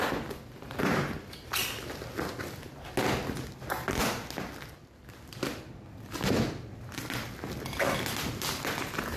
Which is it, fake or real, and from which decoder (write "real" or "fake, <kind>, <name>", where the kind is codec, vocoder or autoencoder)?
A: real